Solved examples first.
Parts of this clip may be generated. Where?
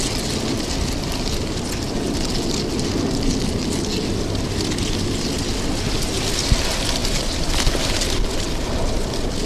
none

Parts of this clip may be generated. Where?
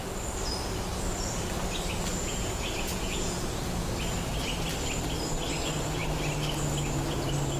2.1-3.9 (vocoder, Vocos)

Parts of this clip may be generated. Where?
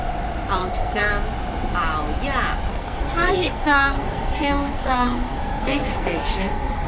0.6-1.1 (codec, SNAC); 2.7-6.9